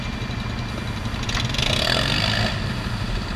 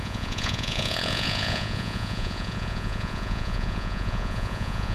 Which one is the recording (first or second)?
first